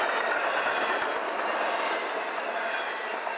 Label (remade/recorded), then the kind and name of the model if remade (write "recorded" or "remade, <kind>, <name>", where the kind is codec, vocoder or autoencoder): recorded